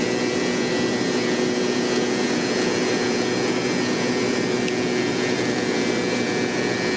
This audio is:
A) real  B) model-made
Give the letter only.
A